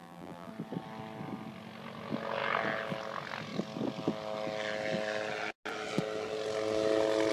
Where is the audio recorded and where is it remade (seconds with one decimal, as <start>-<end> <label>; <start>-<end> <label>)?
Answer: 0.0-0.5 remade; 0.5-7.3 recorded